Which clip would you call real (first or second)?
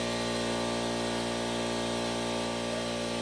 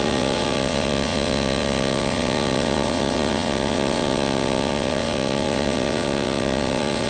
first